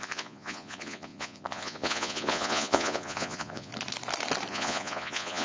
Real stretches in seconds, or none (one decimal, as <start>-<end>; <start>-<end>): 3.7-4.5